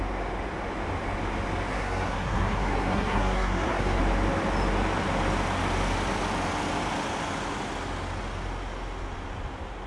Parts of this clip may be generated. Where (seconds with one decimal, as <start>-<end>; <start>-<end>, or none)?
1.7-4.0